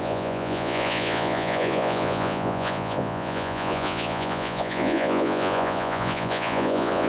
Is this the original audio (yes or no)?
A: no